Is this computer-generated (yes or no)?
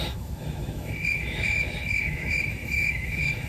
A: yes